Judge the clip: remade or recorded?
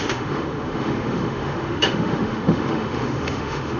remade